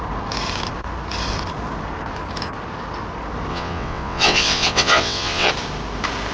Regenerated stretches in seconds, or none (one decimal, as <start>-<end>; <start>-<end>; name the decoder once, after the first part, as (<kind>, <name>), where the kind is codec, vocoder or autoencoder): 3.5-5.5 (vocoder, WaveNeXt)